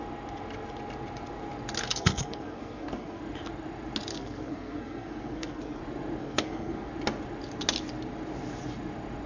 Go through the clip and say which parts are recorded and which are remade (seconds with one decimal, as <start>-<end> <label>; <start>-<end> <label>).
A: 0.0-1.9 recorded; 1.9-3.2 remade; 3.2-4.1 recorded; 4.1-5.8 remade; 5.8-6.2 recorded; 6.2-6.9 remade; 6.9-9.3 recorded